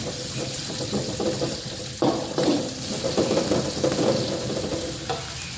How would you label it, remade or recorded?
recorded